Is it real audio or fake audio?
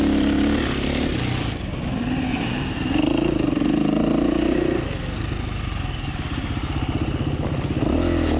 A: real